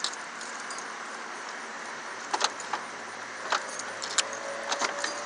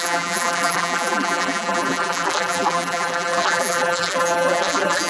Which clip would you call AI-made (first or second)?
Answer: second